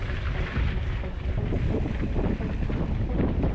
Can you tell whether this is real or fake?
real